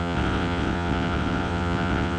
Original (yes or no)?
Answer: no